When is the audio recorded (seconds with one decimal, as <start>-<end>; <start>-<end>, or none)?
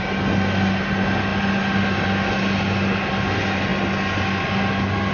0.0-5.1